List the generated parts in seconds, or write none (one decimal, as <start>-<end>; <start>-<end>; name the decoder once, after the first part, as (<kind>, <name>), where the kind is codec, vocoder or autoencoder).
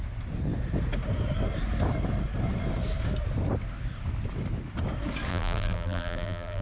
5.3-6.6 (vocoder, BigVGAN v2)